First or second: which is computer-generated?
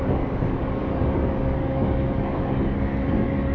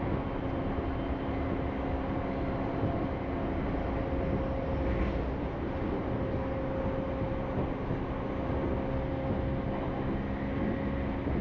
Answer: first